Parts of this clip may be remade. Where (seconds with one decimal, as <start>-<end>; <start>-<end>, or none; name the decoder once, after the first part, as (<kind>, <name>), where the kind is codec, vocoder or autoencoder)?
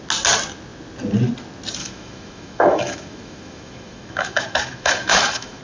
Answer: 1.8-5.6 (autoencoder, DAC-VAE)